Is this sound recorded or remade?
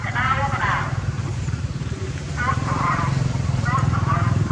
remade